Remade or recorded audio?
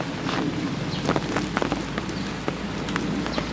recorded